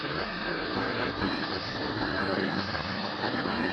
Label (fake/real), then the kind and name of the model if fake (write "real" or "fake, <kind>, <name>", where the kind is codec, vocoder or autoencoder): fake, codec, SNAC